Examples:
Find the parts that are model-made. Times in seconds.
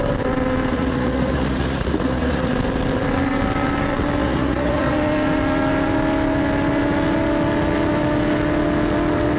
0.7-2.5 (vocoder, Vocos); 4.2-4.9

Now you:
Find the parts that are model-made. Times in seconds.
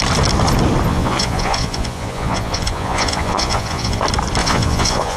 0.9-4.0 (vocoder, Vocos); 4.4-5.2